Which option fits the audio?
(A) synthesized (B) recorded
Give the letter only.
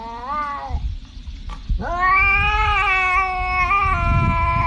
B